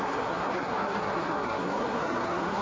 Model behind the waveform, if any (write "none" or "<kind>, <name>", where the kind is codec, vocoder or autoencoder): codec, SNAC